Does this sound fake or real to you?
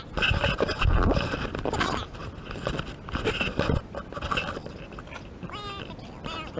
real